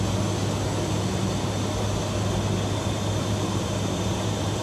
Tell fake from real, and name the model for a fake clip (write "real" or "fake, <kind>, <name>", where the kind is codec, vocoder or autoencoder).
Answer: real